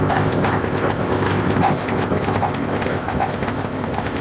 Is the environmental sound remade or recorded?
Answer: remade